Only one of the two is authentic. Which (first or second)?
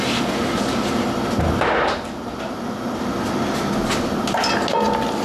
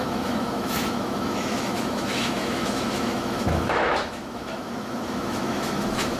first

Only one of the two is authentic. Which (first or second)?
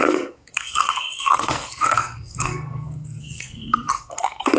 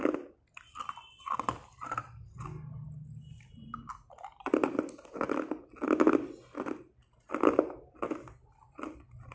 second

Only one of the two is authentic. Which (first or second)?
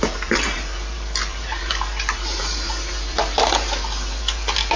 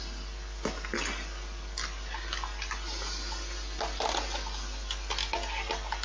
second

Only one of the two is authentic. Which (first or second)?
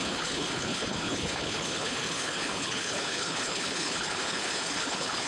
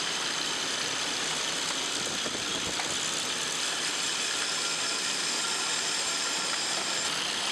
second